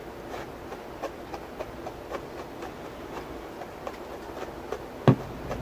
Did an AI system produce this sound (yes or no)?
no